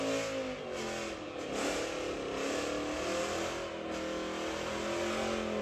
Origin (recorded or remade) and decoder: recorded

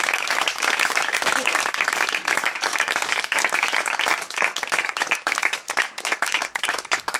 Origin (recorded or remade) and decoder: remade, codec, DAC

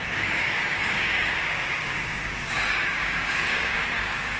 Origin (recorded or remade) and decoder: remade, codec, DAC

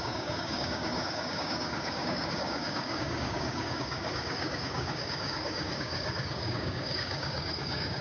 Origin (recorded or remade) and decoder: remade, codec, DAC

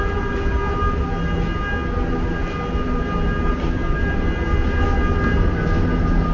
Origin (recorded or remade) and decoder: recorded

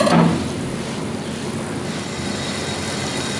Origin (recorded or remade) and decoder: recorded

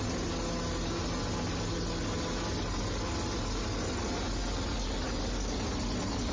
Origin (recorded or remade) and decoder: recorded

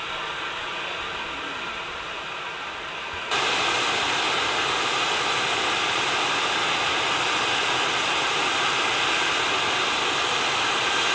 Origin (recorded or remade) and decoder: recorded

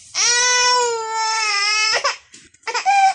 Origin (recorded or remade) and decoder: recorded